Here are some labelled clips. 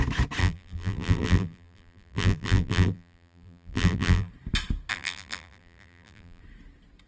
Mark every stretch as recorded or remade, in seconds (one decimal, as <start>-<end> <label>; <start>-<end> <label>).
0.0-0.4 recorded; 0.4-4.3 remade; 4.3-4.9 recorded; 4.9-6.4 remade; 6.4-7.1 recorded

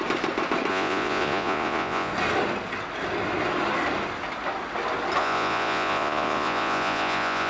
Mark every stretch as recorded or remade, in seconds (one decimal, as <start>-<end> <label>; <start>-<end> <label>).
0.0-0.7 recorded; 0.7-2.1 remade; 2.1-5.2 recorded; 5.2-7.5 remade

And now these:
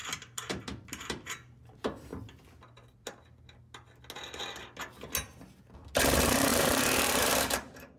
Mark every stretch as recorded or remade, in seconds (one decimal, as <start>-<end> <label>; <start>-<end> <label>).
0.0-2.1 remade; 2.1-5.6 recorded; 5.6-8.0 remade

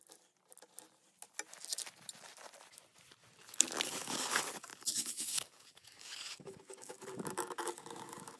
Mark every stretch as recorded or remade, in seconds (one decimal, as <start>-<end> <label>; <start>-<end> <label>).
0.0-3.9 recorded; 3.9-8.4 remade

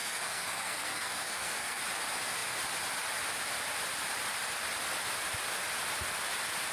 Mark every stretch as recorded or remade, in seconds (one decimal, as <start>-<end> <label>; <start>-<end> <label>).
0.0-1.8 remade; 1.8-6.7 recorded

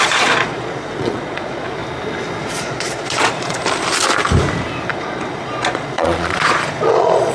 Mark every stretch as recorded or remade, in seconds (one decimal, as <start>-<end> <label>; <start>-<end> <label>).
0.0-1.8 remade; 1.8-2.4 recorded; 2.4-3.6 remade; 3.6-4.9 recorded; 4.9-7.3 remade

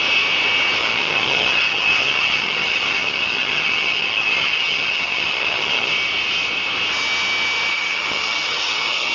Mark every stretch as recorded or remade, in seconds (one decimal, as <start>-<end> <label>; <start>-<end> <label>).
0.0-0.8 recorded; 0.8-5.9 remade; 5.9-7.7 recorded; 7.7-9.1 remade